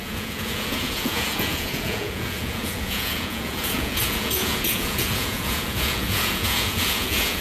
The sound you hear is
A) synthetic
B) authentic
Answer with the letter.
A